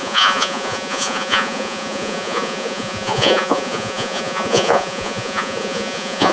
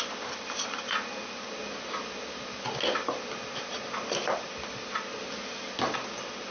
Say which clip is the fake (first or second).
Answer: first